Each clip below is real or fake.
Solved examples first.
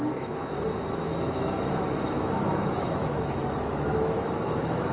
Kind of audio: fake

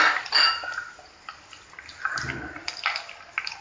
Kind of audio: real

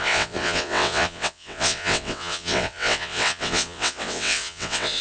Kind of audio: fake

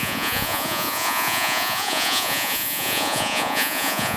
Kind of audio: fake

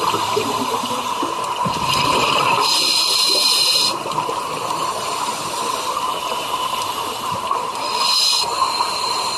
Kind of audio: fake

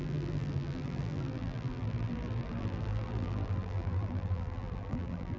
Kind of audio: fake